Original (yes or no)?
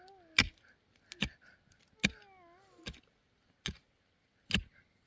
yes